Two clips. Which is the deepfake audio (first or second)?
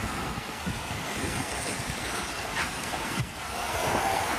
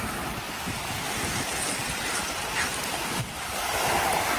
first